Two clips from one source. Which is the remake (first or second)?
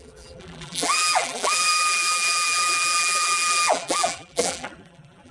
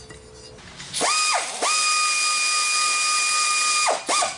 first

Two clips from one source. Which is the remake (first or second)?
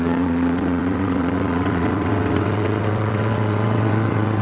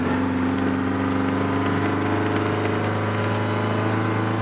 first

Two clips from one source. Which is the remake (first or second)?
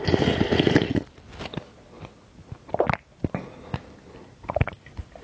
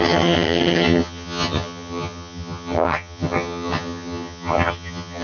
second